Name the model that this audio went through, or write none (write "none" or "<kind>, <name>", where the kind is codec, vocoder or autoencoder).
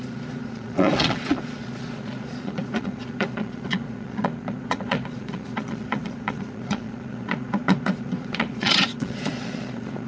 vocoder, Vocos